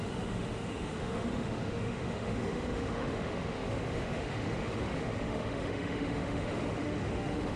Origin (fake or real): fake